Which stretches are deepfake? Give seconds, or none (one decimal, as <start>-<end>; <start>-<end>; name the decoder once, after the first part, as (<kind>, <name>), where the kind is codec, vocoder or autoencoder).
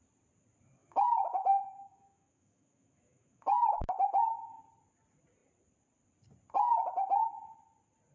0.8-4.6 (autoencoder, DAC-VAE)